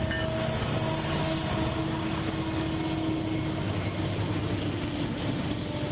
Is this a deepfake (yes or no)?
no